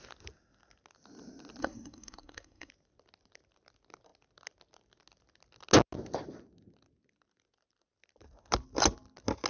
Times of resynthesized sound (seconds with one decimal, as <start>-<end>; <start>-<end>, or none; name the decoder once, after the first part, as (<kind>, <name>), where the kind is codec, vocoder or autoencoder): 1.6-2.7 (codec, SNAC)